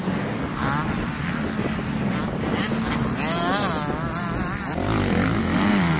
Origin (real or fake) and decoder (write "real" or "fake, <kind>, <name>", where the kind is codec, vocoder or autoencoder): real